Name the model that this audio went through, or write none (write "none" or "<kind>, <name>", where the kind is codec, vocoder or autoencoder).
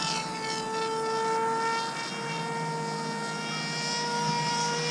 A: none